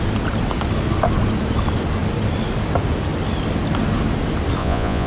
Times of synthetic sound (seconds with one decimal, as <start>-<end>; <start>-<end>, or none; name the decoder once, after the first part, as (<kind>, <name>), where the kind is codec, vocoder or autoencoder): 4.6-5.1 (vocoder, Vocos)